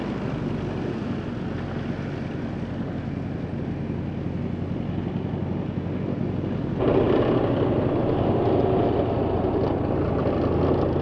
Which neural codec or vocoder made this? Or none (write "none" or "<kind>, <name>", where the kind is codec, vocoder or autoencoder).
none